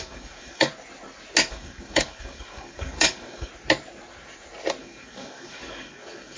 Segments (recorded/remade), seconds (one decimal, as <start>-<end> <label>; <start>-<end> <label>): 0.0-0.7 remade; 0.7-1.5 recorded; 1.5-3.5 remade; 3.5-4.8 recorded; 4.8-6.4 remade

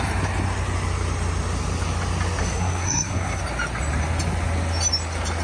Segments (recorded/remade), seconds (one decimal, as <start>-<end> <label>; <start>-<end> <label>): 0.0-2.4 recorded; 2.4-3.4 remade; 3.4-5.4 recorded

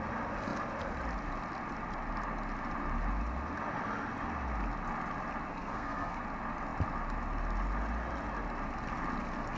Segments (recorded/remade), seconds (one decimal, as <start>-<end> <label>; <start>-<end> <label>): 0.0-5.5 recorded; 5.5-6.2 remade; 6.2-9.6 recorded

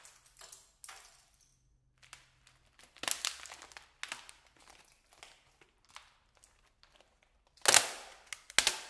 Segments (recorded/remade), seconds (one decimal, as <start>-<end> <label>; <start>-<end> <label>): 0.0-8.9 recorded

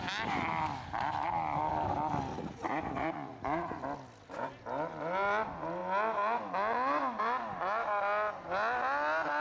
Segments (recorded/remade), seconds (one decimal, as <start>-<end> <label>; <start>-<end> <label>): 0.0-2.3 recorded; 2.3-3.8 remade; 3.8-9.4 recorded